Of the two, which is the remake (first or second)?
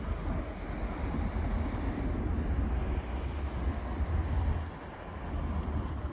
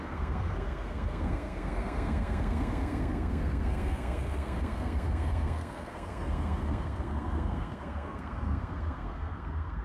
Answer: second